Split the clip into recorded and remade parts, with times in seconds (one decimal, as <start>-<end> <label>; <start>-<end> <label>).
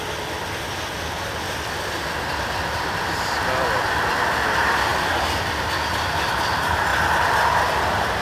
0.0-6.9 recorded; 6.9-7.5 remade; 7.5-8.2 recorded